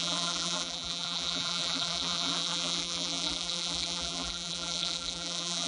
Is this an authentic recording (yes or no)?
no